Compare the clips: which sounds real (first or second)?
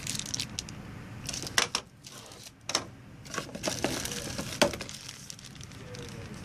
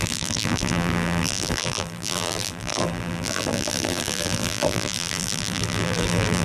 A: first